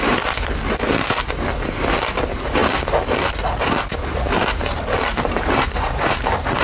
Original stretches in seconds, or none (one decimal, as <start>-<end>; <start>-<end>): 0.0-5.1